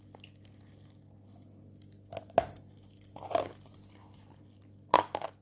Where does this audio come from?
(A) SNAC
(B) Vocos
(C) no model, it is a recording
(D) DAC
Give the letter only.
C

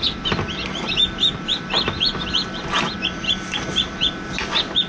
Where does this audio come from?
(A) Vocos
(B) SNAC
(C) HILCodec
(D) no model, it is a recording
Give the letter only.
D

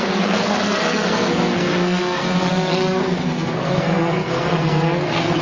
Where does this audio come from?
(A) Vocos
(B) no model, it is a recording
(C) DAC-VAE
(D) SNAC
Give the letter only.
D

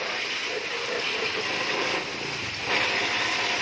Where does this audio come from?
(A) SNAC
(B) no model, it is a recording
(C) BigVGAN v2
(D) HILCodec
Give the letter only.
B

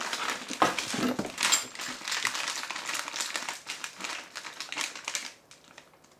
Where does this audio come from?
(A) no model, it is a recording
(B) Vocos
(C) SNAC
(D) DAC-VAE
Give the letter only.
A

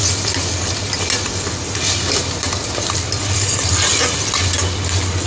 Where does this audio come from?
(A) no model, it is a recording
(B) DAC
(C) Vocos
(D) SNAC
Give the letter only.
A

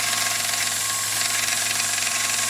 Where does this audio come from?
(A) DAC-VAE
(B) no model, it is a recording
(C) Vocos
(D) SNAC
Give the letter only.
B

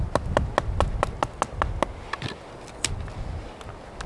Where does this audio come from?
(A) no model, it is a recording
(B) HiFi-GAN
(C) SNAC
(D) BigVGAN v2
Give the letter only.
A